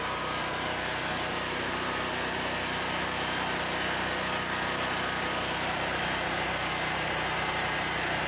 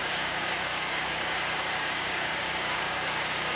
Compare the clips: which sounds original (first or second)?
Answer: first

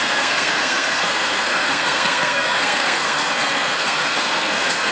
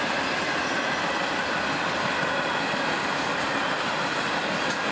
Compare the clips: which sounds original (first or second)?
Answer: second